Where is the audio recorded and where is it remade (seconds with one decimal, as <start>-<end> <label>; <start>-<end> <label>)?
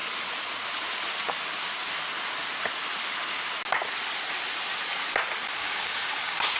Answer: 0.0-5.6 recorded; 5.6-6.6 remade